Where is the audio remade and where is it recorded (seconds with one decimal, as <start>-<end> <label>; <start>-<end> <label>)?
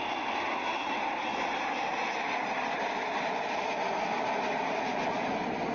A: 0.0-0.7 recorded; 0.7-4.1 remade; 4.1-5.7 recorded